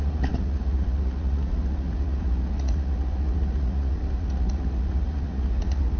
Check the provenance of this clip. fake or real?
fake